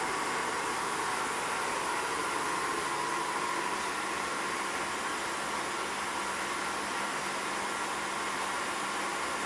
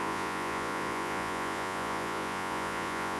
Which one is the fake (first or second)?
second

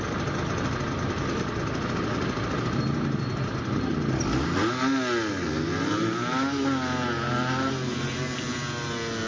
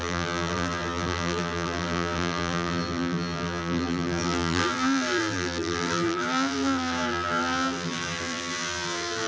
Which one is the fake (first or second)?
second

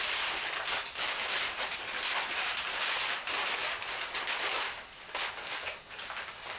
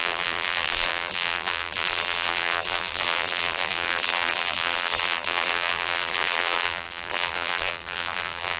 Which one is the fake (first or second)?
second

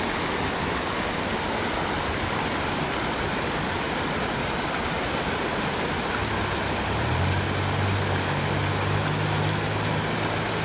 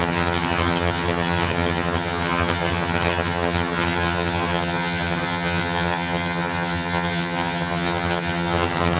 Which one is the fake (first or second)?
second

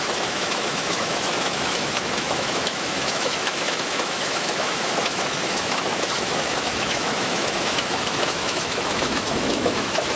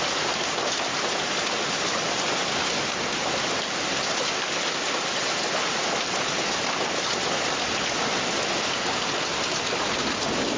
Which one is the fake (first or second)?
first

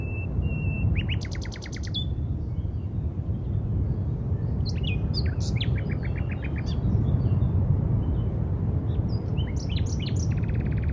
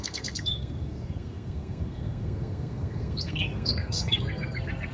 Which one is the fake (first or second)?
second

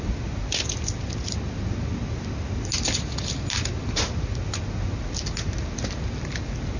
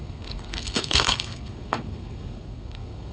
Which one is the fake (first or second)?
second